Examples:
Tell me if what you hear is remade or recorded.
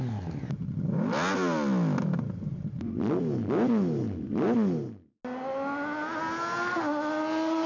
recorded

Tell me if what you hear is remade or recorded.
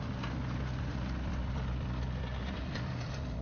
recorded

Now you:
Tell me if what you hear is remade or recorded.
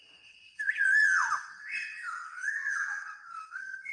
remade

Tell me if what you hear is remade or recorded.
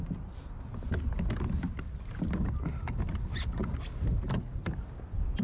recorded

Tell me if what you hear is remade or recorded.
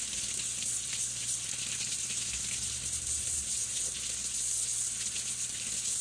recorded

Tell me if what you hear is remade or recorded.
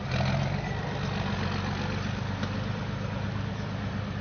recorded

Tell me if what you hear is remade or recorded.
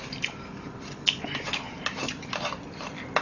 recorded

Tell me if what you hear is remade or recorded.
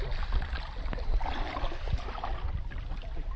recorded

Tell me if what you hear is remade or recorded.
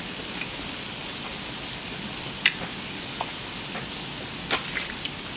recorded